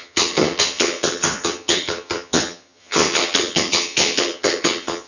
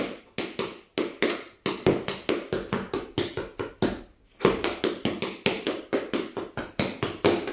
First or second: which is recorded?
second